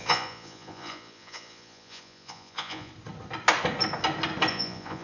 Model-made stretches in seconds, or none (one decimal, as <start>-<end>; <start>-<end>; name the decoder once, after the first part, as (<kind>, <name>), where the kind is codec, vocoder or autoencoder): 0.0-2.9 (vocoder, Vocos); 4.5-5.0

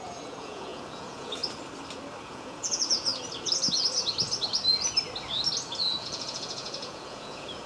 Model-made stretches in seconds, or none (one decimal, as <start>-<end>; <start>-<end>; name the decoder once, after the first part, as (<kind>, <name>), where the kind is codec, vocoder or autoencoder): 0.0-1.4 (vocoder, Vocos); 2.2-3.1; 6.0-7.7